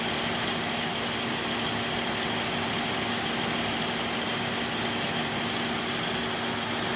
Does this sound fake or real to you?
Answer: real